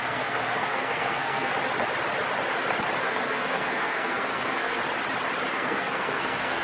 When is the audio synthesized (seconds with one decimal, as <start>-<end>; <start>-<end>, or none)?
0.0-1.5; 3.0-4.8; 5.5-6.6